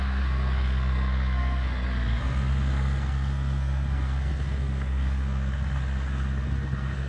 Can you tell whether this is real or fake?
fake